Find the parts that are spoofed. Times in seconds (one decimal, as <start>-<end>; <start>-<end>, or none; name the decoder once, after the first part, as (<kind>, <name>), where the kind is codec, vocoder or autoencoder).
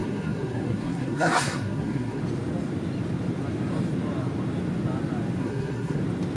0.0-2.2 (codec, SNAC); 5.4-6.0